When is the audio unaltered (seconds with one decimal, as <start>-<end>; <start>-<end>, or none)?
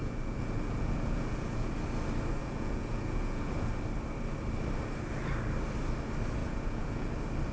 1.7-2.4; 3.8-6.4; 7.1-7.5